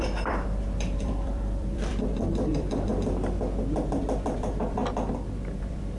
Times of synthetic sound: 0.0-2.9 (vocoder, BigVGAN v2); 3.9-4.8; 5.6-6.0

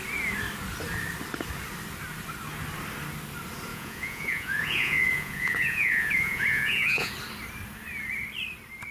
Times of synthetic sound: 3.7-7.1 (vocoder, Vocos)

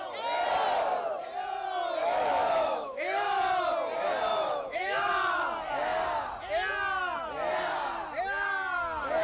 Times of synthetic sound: 2.0-3.4 (autoencoder, DAC-VAE); 4.3-5.1

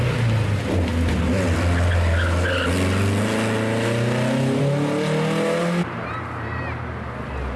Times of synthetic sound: 5.6-6.6 (vocoder, BigVGAN v2)

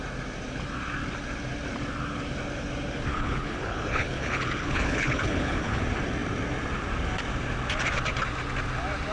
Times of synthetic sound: 3.1-5.8 (codec, HILCodec)

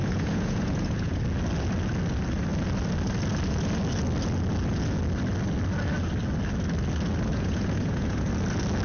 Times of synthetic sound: 0.0-1.2 (vocoder, Vocos); 7.3-8.3

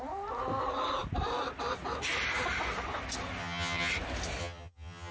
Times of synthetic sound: 3.4-3.9 (vocoder, HiFi-GAN); 4.4-5.1

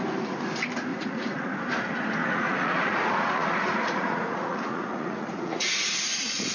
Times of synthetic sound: 0.9-1.5 (vocoder, Vocos); 2.2-5.9